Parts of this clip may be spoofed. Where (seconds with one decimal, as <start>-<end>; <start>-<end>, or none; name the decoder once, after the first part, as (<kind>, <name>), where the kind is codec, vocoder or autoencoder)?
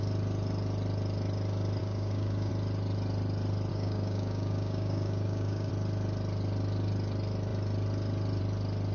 1.8-2.5 (codec, DAC); 3.7-5.7